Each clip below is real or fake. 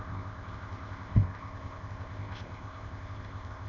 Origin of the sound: fake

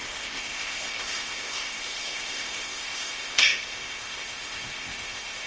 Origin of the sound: fake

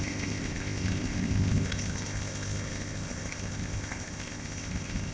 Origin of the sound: fake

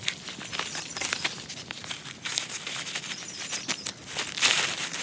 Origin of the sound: real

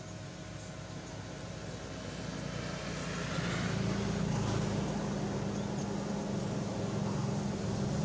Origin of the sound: real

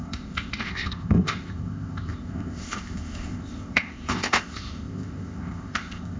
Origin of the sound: fake